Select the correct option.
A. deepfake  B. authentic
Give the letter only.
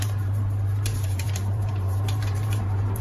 A